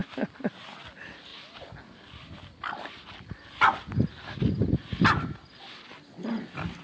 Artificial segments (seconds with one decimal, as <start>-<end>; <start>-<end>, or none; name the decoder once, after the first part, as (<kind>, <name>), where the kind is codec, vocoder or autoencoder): none